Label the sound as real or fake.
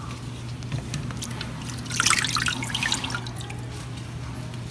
real